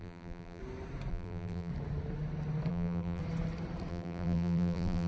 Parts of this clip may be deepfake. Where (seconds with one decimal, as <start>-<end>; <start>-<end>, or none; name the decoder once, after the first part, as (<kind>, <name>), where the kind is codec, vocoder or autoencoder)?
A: 0.0-0.6 (vocoder, BigVGAN v2); 1.1-1.7; 2.7-3.2; 3.9-5.1